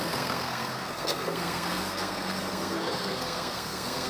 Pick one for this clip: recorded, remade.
remade